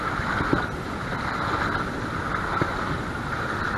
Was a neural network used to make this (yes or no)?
no